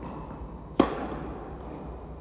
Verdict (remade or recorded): recorded